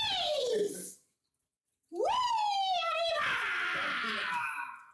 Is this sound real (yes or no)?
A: yes